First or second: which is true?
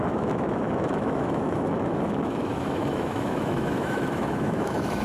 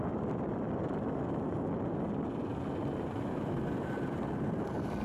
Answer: second